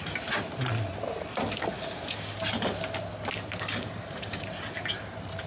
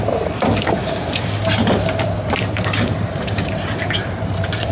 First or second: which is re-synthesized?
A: second